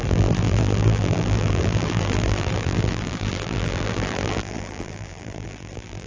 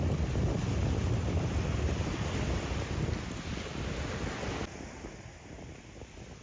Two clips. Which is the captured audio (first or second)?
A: second